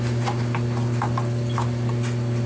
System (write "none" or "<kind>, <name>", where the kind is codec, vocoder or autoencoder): none